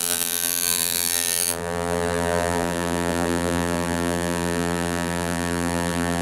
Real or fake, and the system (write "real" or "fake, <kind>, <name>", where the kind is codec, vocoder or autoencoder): fake, vocoder, BigVGAN v2